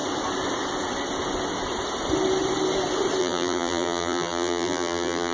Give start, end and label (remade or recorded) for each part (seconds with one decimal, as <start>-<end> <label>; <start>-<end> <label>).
0.0-3.2 recorded; 3.2-5.3 remade